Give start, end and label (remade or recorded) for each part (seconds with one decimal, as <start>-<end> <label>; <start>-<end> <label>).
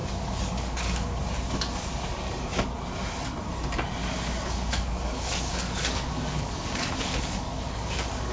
0.0-1.2 remade; 1.2-4.0 recorded; 4.0-8.3 remade